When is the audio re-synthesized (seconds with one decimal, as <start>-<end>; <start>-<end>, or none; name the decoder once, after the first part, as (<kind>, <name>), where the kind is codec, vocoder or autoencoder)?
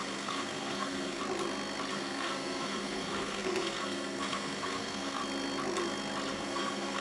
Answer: 0.0-1.2 (codec, SNAC); 1.9-5.2; 6.3-7.0